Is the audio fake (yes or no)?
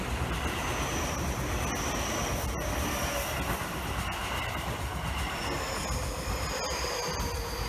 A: no